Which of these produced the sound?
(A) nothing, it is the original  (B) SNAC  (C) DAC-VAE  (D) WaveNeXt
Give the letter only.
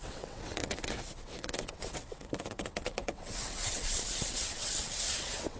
D